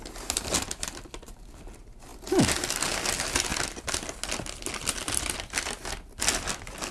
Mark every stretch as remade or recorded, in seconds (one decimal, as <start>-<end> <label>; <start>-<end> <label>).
0.0-6.9 recorded